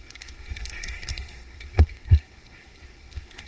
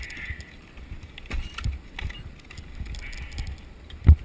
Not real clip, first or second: first